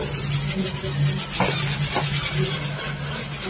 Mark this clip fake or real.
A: real